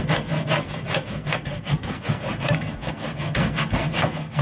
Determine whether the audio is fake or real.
fake